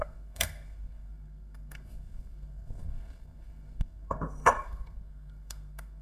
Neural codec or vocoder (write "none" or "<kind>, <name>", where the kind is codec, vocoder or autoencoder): codec, SNAC